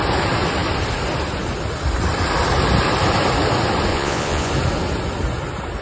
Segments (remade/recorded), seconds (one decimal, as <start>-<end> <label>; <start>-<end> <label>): 0.0-3.9 recorded; 3.9-4.5 remade; 4.5-5.8 recorded